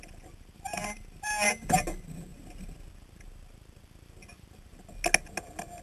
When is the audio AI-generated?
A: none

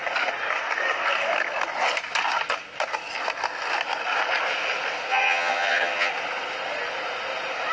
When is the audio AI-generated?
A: 5.1-6.1 (vocoder, HiFi-GAN)

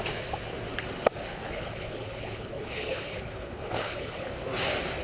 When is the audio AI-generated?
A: 1.3-4.3 (codec, HILCodec)

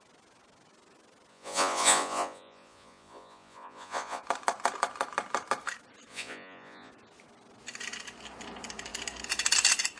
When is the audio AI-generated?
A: 1.3-4.2 (vocoder, Vocos); 6.1-6.9

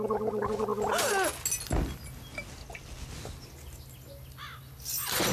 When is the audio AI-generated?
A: none

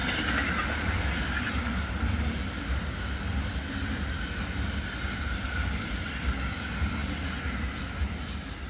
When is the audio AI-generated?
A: none

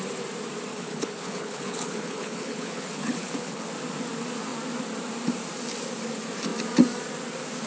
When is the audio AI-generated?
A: 0.7-3.7 (codec, HILCodec)

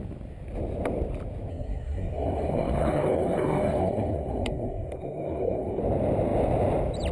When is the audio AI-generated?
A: 1.5-5.8 (codec, SNAC)